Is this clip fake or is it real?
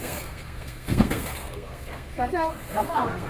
fake